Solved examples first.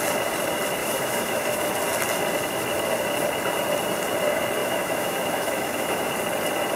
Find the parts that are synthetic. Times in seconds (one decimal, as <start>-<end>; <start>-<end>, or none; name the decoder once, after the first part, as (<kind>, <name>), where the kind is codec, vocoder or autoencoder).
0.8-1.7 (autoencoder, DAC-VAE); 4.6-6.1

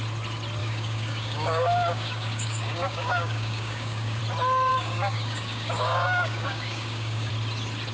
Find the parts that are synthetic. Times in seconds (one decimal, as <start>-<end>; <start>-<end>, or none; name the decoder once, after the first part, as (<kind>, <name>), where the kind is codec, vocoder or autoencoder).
0.6-4.2 (codec, DAC); 4.7-7.3

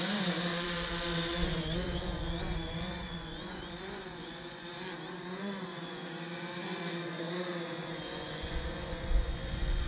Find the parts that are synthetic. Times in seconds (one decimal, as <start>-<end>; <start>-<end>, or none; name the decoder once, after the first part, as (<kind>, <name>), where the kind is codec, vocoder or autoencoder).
0.0-4.7 (vocoder, Vocos); 5.2-9.9

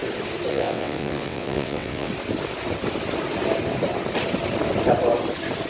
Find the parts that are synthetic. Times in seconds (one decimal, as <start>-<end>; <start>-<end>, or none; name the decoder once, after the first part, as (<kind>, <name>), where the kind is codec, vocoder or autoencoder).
0.5-2.1 (vocoder, WaveNeXt)

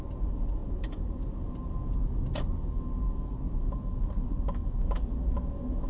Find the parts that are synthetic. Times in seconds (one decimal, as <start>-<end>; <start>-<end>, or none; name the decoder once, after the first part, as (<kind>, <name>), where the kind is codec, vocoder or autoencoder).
none

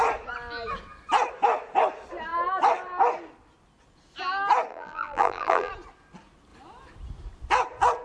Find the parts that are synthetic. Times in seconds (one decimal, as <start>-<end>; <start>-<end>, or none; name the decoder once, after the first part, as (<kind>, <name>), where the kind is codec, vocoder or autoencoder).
4.7-5.7 (vocoder, BigVGAN v2)

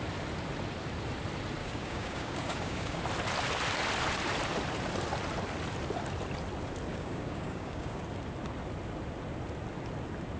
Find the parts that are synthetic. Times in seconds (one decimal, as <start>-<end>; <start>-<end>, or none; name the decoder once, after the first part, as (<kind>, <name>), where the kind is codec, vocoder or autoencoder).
1.6-3.0 (codec, DAC); 6.9-8.0